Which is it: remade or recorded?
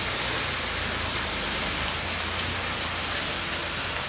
recorded